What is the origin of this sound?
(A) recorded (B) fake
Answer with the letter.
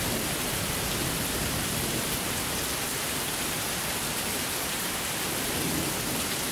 B